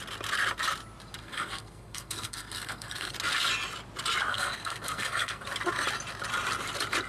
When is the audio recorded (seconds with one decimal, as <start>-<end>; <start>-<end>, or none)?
0.0-1.2; 3.1-4.3; 5.4-7.1